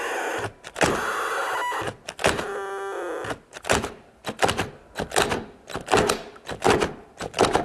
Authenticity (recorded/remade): recorded